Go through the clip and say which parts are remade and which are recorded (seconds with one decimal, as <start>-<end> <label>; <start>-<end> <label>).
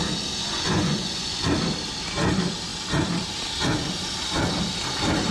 0.0-0.4 recorded; 0.4-1.5 remade; 1.5-5.3 recorded